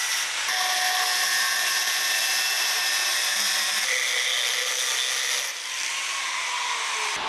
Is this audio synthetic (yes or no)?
no